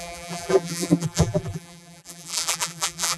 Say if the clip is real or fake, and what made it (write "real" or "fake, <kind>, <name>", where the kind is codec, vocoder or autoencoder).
fake, vocoder, BigVGAN v2